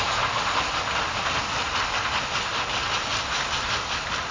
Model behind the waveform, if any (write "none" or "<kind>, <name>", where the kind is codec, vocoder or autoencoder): none